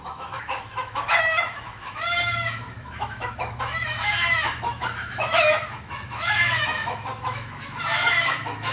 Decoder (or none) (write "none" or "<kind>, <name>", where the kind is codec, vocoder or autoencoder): autoencoder, DAC-VAE